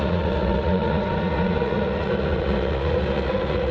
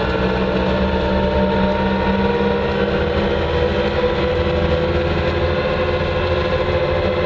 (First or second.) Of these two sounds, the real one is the second